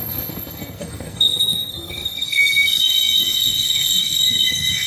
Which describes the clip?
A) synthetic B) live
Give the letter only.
A